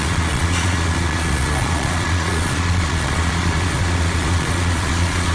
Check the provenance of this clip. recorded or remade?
remade